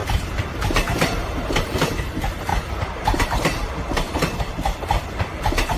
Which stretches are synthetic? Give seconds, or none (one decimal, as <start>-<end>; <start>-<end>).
0.0-1.9; 2.5-3.7